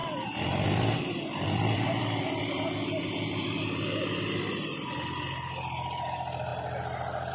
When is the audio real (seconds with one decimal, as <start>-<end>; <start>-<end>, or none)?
4.4-7.3